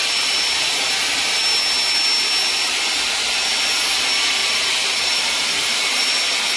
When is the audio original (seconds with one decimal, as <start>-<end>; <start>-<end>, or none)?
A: 0.0-4.4; 6.0-6.6

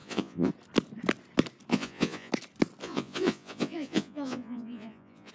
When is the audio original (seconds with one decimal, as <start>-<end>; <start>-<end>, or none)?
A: 0.5-1.7; 2.3-2.8

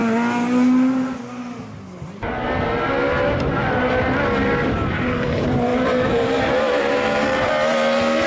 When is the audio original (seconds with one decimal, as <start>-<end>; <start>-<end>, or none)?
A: 0.0-5.7; 7.5-8.3

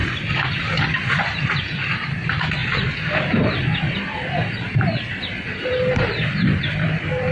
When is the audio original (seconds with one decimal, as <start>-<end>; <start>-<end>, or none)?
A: 0.0-0.6

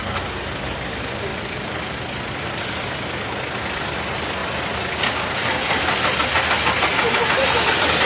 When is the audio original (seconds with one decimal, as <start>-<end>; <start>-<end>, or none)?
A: 0.0-1.3; 2.5-5.4; 6.1-8.1